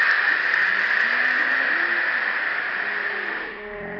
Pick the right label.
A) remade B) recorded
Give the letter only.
B